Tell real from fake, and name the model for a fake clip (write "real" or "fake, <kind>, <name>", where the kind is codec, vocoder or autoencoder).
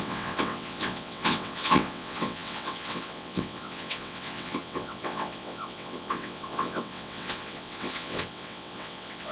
fake, vocoder, WaveNeXt